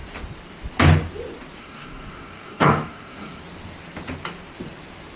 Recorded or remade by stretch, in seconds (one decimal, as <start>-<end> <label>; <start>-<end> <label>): 0.0-1.6 recorded; 1.6-3.4 remade; 3.4-5.2 recorded